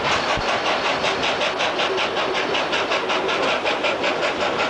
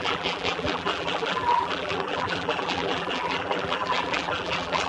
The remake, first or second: second